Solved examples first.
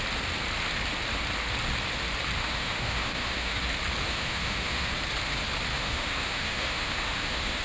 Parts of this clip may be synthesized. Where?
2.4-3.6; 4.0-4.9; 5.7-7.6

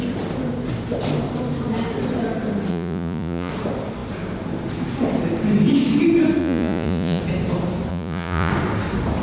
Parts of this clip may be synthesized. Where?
2.7-3.5; 6.4-7.2; 7.9-8.5

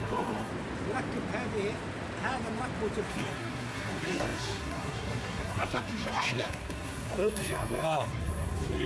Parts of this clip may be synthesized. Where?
0.0-0.5; 3.1-8.9

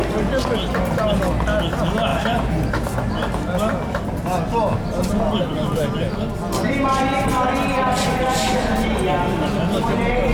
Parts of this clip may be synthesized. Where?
none

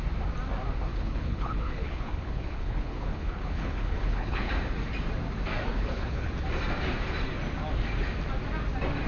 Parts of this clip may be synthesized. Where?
0.9-4.5; 5.7-6.3

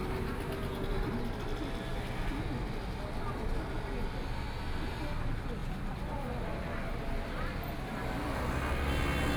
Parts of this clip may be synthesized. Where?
0.0-1.2

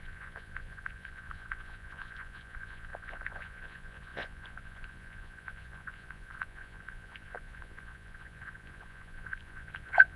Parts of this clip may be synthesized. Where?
0.0-10.2

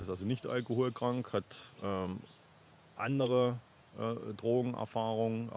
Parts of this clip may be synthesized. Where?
1.5-3.9